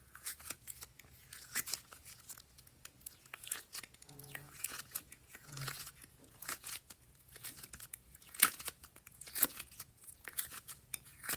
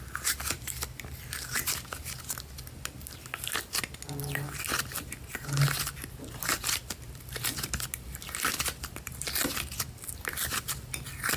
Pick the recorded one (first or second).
second